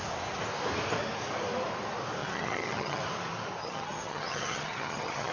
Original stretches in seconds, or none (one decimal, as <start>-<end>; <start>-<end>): 0.0-2.2; 3.0-3.6